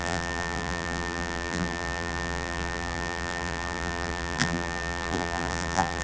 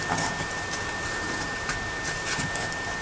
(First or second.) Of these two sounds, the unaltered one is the second